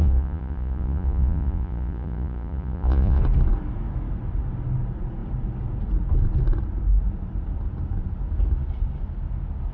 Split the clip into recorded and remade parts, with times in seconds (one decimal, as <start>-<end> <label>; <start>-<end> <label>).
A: 0.0-3.2 remade; 3.2-9.7 recorded